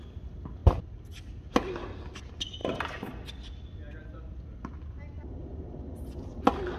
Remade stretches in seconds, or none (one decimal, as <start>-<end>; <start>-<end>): none